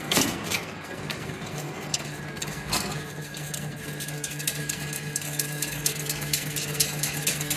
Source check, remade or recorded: remade